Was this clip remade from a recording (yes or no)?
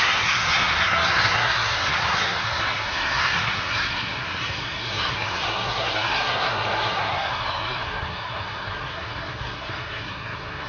yes